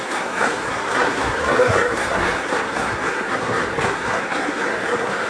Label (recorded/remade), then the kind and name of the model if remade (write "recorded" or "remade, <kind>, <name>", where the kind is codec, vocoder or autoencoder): remade, codec, SNAC